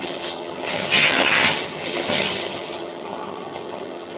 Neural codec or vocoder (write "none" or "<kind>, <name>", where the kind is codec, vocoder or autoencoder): vocoder, HiFi-GAN